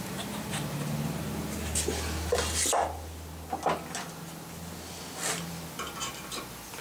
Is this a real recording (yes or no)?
yes